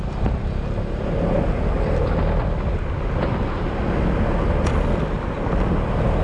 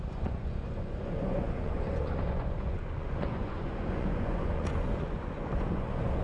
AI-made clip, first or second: second